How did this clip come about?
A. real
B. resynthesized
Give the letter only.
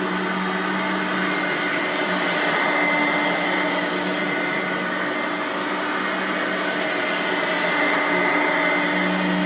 A